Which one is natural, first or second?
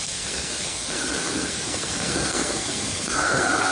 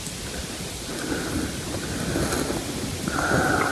second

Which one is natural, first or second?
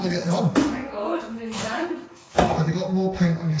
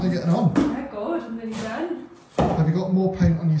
second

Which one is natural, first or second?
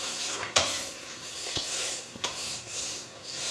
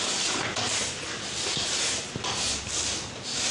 second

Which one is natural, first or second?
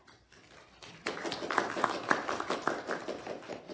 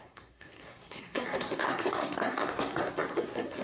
first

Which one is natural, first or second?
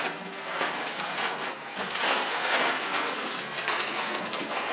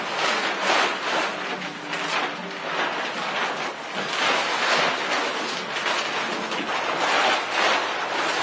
second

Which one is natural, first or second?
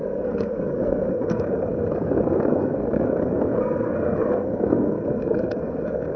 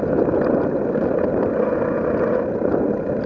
second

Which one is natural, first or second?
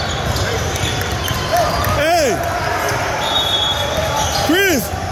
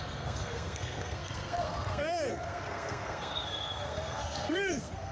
first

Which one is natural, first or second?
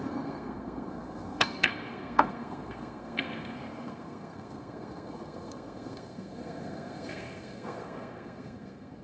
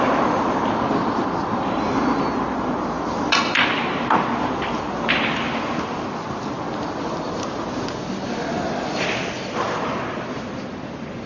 second